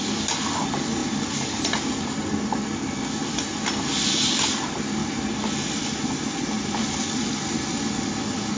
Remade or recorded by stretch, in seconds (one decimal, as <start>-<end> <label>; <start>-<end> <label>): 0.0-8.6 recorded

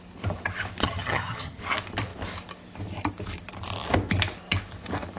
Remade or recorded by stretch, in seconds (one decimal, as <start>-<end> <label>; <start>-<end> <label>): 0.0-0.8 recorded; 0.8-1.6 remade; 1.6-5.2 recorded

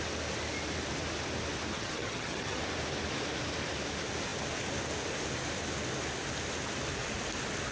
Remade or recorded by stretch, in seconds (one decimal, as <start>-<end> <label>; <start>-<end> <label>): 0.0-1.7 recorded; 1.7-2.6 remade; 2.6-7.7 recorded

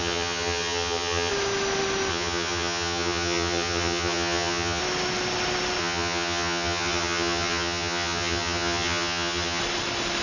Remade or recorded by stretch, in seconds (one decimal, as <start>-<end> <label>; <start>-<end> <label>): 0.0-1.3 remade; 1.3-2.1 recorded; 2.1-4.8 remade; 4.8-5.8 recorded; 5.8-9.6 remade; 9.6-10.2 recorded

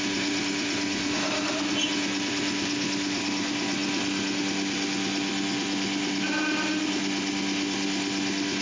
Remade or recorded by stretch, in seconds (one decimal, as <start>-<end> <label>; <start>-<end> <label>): 0.0-8.6 recorded

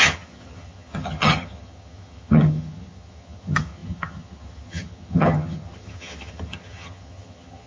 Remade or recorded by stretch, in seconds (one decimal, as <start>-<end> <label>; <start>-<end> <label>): 0.0-7.7 remade